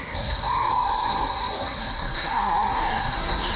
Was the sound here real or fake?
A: fake